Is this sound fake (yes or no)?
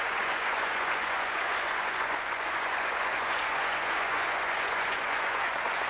yes